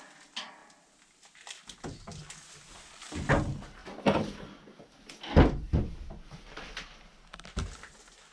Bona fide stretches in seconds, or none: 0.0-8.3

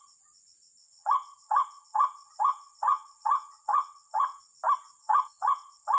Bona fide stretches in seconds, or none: 0.0-0.8; 4.4-5.0

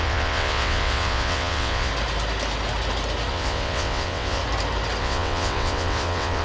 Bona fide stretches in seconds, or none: 1.9-3.3; 4.4-5.0

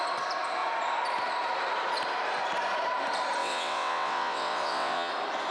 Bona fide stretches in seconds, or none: 0.0-3.4; 5.1-5.5

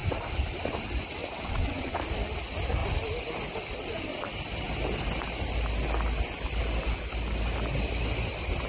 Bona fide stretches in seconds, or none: 0.0-1.2; 2.0-8.7